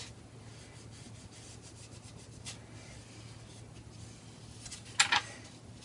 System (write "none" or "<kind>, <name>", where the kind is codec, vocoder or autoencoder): none